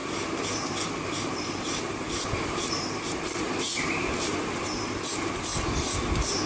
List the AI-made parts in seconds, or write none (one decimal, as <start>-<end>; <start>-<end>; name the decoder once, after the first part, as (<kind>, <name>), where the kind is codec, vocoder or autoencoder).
0.0-5.5 (vocoder, BigVGAN v2)